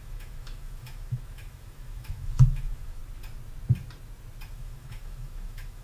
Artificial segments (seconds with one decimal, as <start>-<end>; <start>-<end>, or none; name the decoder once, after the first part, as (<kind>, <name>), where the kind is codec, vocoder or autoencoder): 0.0-3.0 (autoencoder, DAC-VAE); 4.5-5.8